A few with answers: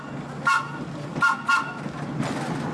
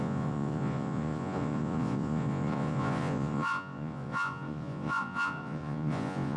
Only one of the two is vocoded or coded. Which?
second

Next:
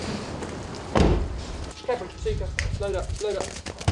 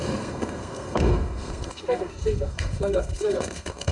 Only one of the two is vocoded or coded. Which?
second